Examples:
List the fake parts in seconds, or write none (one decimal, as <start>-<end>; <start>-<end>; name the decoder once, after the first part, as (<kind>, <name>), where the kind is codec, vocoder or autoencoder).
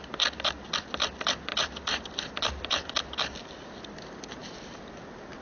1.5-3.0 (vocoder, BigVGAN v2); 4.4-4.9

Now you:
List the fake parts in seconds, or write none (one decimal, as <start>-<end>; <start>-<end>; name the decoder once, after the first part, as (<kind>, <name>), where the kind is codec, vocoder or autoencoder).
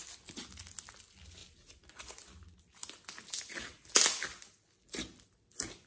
none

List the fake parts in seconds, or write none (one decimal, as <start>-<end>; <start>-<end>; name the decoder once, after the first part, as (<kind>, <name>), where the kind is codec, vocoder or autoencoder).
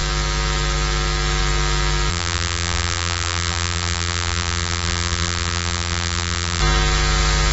2.1-6.6 (vocoder, BigVGAN v2)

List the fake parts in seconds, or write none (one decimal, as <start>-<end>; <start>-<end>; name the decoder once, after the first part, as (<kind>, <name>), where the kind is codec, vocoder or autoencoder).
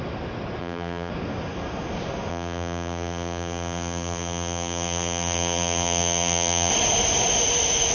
0.6-1.1 (vocoder, BigVGAN v2); 2.3-6.7